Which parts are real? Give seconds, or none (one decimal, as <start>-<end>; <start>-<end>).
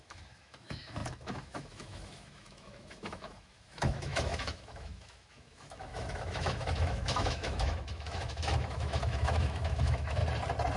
10.2-10.8